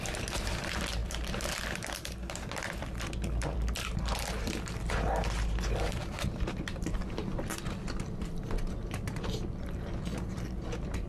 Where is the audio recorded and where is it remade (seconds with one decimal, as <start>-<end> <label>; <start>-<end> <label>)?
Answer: 0.0-11.1 remade